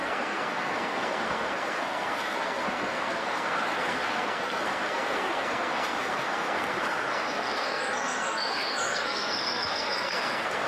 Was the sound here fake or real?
fake